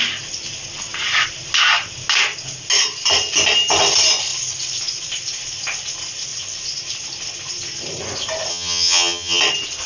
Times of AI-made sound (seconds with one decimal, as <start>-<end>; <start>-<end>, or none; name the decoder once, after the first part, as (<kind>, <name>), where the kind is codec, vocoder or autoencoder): 8.5-9.4 (vocoder, HiFi-GAN)